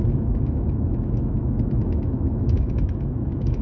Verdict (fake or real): fake